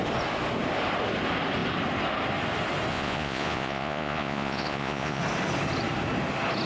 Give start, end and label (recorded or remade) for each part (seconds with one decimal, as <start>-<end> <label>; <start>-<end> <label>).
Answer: 0.0-2.9 recorded; 2.9-5.2 remade; 5.2-6.7 recorded